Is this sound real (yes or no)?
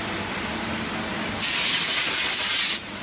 yes